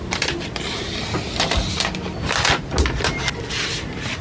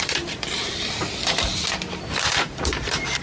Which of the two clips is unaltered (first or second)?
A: first